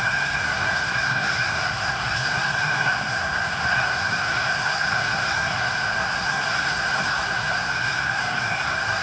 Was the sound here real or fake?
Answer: fake